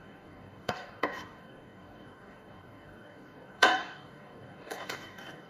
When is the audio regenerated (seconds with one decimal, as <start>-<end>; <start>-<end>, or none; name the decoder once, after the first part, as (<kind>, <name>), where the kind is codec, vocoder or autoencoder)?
0.0-5.5 (codec, DAC)